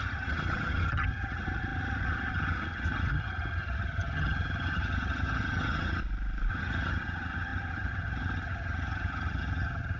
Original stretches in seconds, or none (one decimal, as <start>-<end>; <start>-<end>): 6.0-6.5